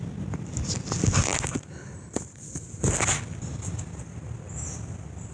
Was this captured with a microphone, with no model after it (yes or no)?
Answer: yes